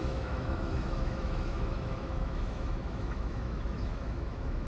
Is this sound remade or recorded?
remade